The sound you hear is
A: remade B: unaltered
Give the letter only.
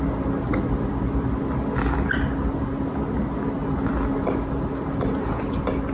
B